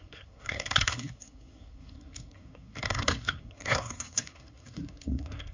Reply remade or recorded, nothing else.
remade